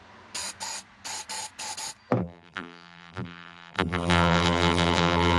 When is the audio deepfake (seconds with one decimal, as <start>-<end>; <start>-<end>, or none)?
2.2-5.4